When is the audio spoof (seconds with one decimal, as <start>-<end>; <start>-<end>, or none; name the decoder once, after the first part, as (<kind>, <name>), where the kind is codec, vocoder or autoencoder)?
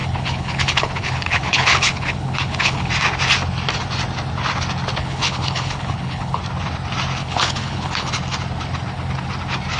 0.0-2.9 (codec, HILCodec); 5.0-6.4; 7.2-8.1